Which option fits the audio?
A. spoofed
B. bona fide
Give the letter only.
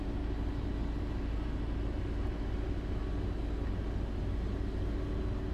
B